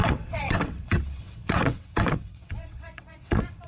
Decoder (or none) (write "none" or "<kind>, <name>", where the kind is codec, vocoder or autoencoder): vocoder, WaveNeXt